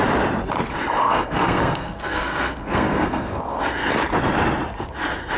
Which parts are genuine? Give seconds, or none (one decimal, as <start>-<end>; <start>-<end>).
0.0-1.0; 3.6-5.4